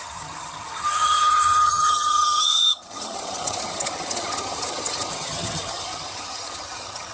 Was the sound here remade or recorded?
remade